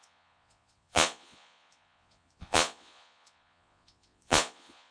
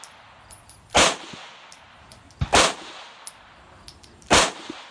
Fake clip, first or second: first